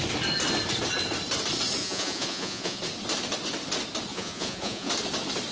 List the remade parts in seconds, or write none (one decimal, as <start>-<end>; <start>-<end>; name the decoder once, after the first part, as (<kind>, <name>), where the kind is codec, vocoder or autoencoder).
1.8-2.8 (vocoder, Vocos); 4.1-4.9